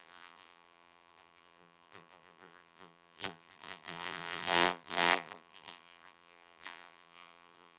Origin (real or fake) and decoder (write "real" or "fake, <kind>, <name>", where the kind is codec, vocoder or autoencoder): fake, vocoder, BigVGAN v2